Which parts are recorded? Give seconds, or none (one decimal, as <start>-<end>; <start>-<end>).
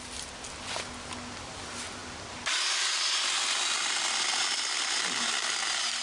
0.0-6.0